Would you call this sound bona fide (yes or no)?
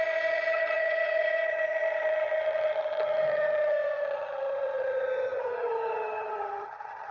no